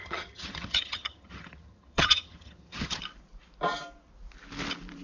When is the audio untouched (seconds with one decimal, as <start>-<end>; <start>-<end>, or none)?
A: 3.0-5.0